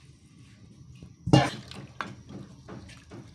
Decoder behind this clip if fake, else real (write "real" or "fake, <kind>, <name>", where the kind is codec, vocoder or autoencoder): real